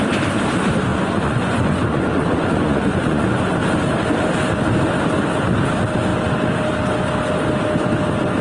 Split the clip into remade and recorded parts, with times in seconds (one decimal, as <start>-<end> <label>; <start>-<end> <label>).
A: 0.0-0.9 recorded; 0.9-3.4 remade; 3.4-8.4 recorded